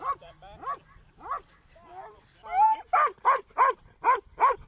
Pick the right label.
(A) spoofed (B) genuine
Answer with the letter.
B